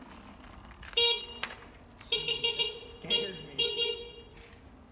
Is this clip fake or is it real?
real